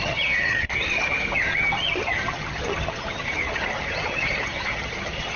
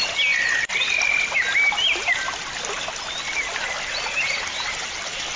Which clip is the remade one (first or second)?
first